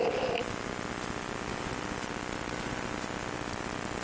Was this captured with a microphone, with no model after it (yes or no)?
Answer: yes